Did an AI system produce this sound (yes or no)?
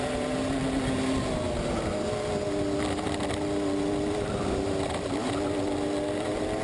no